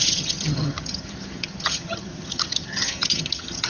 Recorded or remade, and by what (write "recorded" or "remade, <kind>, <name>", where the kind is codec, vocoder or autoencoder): remade, vocoder, HiFi-GAN